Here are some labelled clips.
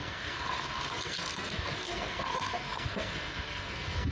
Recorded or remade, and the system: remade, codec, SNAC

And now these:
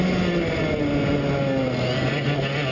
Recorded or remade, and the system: recorded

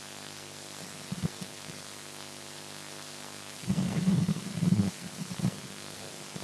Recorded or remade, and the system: remade, codec, SNAC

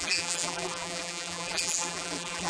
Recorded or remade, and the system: remade, vocoder, BigVGAN v2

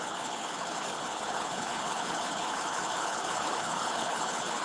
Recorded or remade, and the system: remade, codec, HILCodec